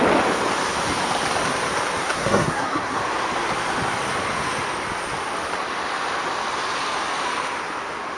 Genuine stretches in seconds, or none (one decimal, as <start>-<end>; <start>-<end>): 0.0-2.0; 3.0-8.2